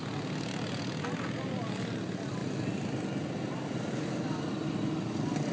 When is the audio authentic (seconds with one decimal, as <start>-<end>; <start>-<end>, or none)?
0.0-5.5